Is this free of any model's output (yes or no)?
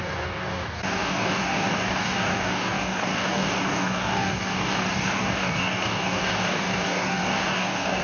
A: no